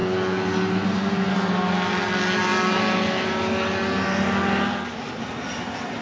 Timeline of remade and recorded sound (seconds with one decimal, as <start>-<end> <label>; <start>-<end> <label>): 0.0-6.0 recorded